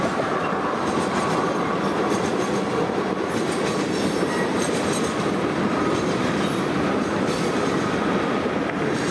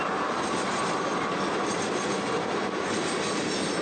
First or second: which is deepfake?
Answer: first